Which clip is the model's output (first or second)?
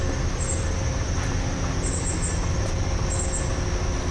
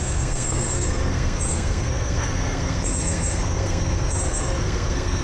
second